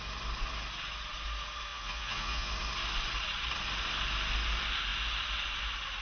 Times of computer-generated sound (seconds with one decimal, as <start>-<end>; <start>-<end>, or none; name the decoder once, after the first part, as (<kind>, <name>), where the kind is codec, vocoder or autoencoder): 1.7-2.5 (vocoder, Vocos)